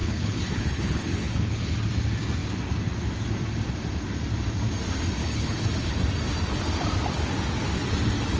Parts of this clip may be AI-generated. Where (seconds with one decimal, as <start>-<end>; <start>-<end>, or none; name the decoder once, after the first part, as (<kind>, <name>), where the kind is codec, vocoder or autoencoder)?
0.0-1.8 (codec, HILCodec); 5.2-5.9